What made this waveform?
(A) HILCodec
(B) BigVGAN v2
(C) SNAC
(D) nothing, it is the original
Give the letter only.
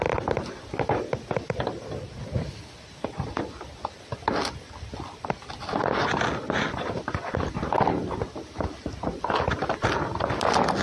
D